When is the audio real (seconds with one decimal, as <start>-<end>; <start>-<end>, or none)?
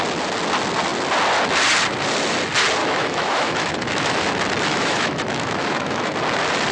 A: 0.0-2.8; 4.3-4.7; 6.1-6.7